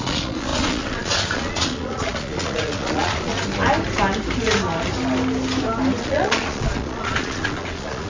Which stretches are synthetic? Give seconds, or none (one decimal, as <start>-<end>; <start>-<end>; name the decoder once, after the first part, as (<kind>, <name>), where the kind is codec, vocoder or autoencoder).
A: 0.0-3.3 (vocoder, Vocos); 6.0-8.1